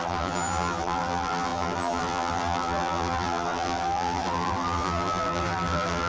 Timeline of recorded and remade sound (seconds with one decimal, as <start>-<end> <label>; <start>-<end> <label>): 0.0-6.1 remade